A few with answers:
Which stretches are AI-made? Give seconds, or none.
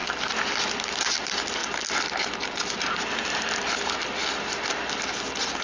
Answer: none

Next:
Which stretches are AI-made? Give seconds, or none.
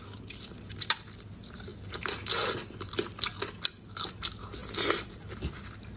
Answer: none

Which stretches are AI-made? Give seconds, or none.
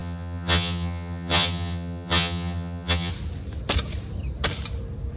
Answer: 0.0-3.1 (vocoder, HiFi-GAN)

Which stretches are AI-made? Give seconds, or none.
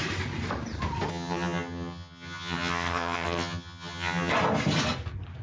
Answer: 1.1-4.3 (vocoder, HiFi-GAN)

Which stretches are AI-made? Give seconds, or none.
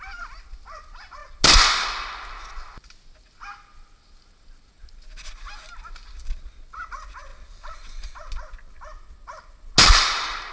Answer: none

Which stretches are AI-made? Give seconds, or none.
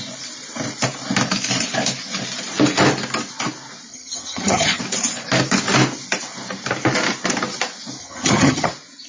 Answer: 3.9-4.8 (vocoder, HiFi-GAN); 8.0-8.7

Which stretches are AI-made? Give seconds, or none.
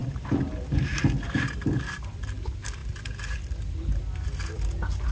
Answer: none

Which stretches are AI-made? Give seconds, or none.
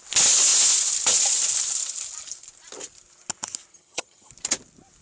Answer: 3.7-4.3 (vocoder, HiFi-GAN)